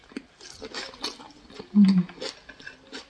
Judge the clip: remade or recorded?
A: recorded